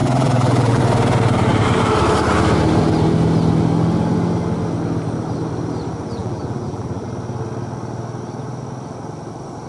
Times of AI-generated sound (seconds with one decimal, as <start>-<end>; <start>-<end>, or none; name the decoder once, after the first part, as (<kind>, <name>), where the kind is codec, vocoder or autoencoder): 0.0-0.8 (vocoder, BigVGAN v2); 6.2-7.1